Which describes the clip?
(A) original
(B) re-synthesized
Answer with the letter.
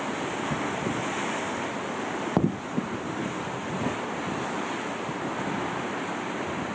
A